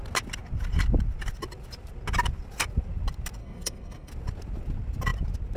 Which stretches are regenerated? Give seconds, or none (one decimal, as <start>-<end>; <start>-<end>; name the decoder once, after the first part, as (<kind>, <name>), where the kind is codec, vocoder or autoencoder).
3.4-4.1 (codec, SNAC)